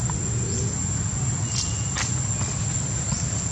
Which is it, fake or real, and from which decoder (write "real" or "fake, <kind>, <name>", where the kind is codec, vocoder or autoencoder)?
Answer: real